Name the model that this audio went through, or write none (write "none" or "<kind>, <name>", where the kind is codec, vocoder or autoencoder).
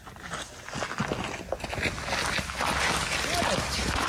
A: none